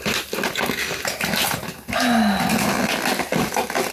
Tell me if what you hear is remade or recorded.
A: recorded